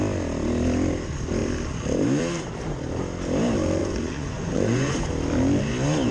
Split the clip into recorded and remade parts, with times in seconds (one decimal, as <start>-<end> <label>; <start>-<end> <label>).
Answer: 0.0-3.8 recorded; 3.8-5.1 remade; 5.1-6.1 recorded